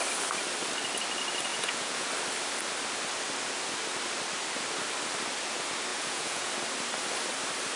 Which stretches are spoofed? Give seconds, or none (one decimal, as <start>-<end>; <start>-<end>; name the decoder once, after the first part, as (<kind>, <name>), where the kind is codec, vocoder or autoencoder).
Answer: 1.5-2.1 (vocoder, Vocos); 5.9-6.5